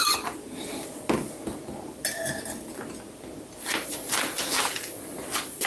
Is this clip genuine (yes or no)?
yes